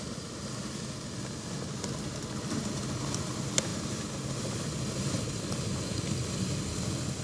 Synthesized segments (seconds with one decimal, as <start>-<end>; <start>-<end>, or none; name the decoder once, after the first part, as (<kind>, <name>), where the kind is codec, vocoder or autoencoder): none